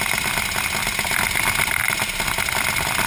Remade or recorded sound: recorded